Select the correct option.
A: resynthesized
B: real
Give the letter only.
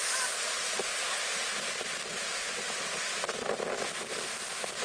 B